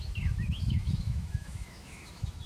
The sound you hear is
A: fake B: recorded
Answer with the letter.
A